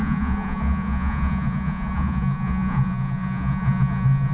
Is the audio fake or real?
fake